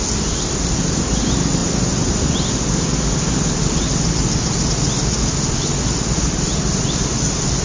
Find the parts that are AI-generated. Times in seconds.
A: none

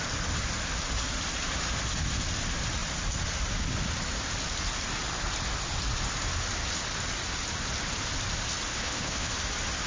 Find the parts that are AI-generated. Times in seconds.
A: 8.7-9.3 (codec, HILCodec)

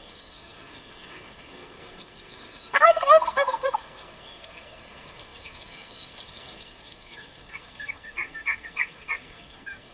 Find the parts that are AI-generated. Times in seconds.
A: 0.0-9.9 (codec, SNAC)

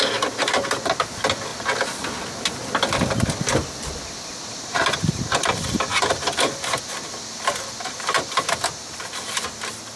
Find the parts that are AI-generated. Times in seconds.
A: none

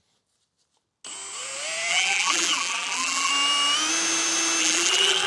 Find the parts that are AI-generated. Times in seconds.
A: 1.9-3.3 (vocoder, BigVGAN v2); 4.6-5.3

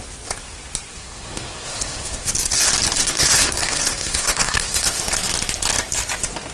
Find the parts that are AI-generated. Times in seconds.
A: 0.9-2.3 (codec, SNAC); 3.0-5.0

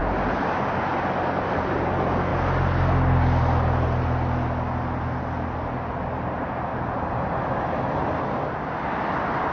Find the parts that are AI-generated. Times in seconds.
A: 6.7-7.3 (vocoder, BigVGAN v2)